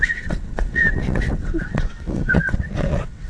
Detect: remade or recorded remade